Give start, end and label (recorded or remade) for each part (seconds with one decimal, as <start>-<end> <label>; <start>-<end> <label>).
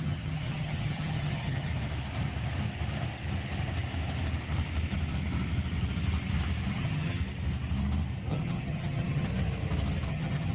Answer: 0.0-1.7 remade; 1.7-6.7 recorded; 6.7-7.2 remade; 7.2-8.3 recorded; 8.3-9.3 remade; 9.3-10.1 recorded; 10.1-10.5 remade